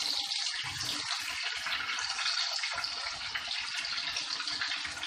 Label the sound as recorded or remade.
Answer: recorded